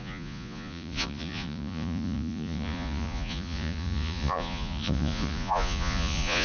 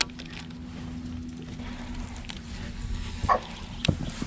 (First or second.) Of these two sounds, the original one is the second